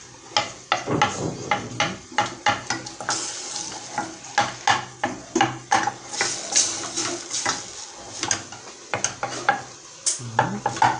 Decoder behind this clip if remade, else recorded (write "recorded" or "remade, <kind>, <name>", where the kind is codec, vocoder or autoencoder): recorded